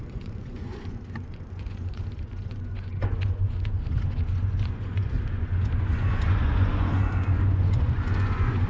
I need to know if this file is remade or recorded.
remade